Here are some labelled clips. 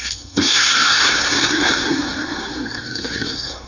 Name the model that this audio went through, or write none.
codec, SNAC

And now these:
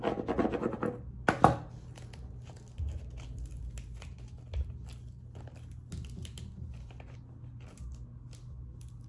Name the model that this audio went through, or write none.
none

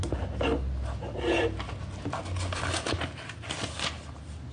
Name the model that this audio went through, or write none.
none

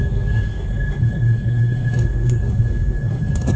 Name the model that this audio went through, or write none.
codec, SNAC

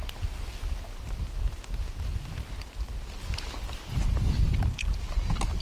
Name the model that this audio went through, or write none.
none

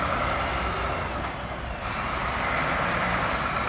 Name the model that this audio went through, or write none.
none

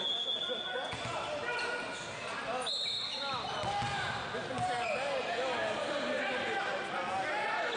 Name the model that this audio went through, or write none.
none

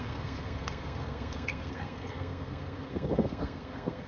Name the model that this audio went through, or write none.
codec, SNAC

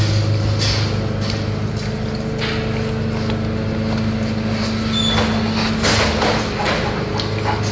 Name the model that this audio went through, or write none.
none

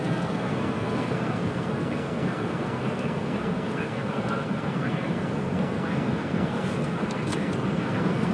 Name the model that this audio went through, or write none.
codec, SNAC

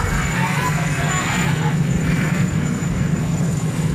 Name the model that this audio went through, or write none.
codec, SNAC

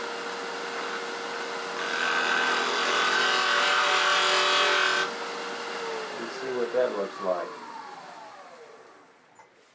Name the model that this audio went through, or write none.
none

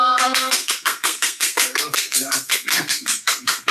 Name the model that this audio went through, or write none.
codec, SNAC